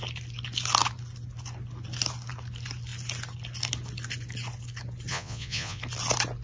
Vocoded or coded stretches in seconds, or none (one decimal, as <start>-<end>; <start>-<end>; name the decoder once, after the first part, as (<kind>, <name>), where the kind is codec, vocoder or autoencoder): 5.1-5.8 (vocoder, Vocos)